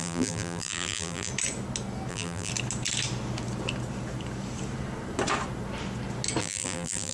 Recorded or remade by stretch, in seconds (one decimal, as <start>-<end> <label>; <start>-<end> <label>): 0.0-1.3 remade; 1.3-2.1 recorded; 2.1-2.5 remade; 2.5-6.4 recorded; 6.4-7.1 remade